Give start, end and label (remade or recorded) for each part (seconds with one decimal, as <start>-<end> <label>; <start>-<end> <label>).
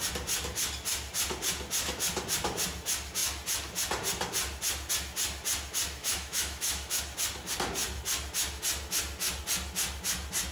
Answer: 0.0-6.0 recorded; 6.0-7.0 remade; 7.0-10.5 recorded